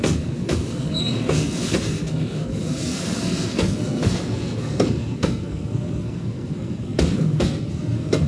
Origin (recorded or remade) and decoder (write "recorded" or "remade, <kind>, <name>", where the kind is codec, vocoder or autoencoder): remade, codec, SNAC